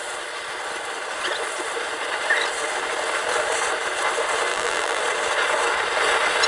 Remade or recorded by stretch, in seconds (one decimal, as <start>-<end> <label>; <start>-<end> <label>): 0.0-4.5 recorded; 4.5-5.0 remade; 5.0-6.5 recorded